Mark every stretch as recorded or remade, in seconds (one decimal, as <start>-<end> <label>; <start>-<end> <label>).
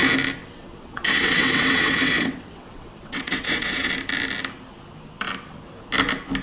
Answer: 0.0-0.4 recorded; 0.4-3.9 remade; 3.9-6.4 recorded